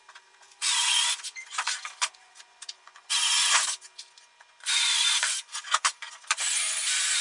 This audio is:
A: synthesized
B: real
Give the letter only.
A